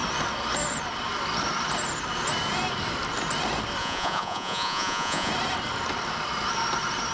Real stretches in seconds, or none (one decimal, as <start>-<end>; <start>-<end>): 0.0-3.8; 5.3-7.1